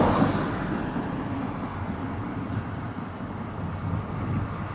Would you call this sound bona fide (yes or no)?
yes